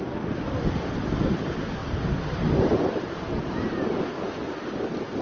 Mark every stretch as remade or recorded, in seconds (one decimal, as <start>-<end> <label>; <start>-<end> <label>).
0.0-1.8 recorded; 1.8-4.4 remade; 4.4-5.2 recorded